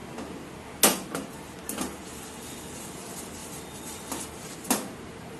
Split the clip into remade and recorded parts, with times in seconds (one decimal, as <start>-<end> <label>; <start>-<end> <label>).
0.0-3.4 recorded; 3.4-4.5 remade; 4.5-5.4 recorded